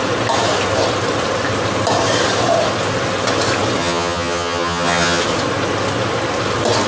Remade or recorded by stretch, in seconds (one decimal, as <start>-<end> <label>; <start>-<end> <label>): 0.0-3.8 recorded; 3.8-5.2 remade; 5.2-6.9 recorded